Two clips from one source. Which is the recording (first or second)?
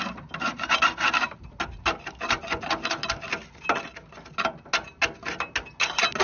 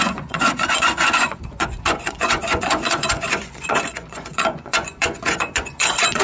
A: first